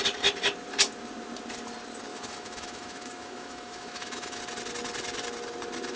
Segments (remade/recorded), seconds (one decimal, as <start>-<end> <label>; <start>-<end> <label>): 0.0-2.1 recorded; 2.1-4.4 remade; 4.4-6.0 recorded